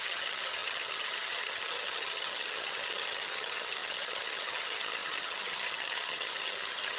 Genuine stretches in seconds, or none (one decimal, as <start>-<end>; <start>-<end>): none